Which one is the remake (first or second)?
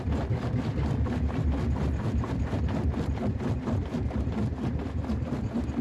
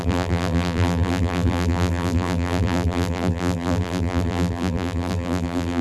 second